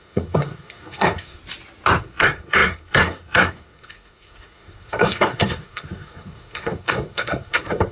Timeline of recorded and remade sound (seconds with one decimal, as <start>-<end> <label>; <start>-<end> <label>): 0.0-1.4 remade; 1.4-2.0 recorded; 2.0-7.9 remade